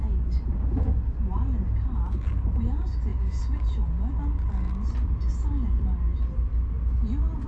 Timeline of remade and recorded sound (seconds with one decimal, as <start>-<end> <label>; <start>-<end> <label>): 0.0-7.5 recorded